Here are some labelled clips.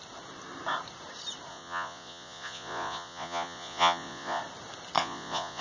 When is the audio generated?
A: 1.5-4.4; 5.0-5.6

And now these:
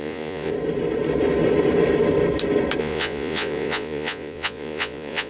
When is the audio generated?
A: 0.0-0.5; 2.8-5.3

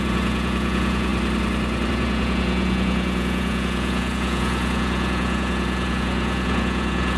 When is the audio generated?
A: 0.0-1.1; 1.9-7.2

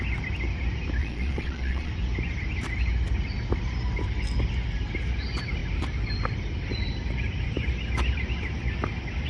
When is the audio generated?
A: 1.0-1.9

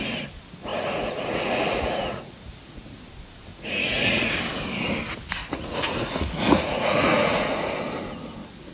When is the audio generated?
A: 0.7-3.0; 3.5-4.4; 5.4-7.7

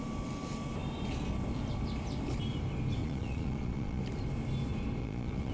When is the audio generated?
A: 3.0-4.0; 5.0-5.5